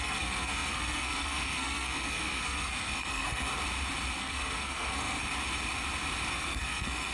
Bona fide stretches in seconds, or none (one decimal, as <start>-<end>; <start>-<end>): 3.5-4.2; 5.2-6.3